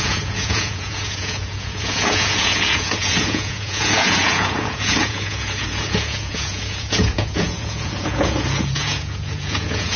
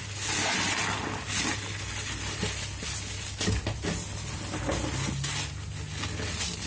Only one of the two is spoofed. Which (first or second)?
first